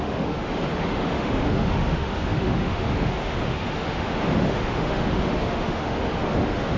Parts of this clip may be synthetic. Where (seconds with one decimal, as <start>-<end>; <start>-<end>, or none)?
0.0-6.8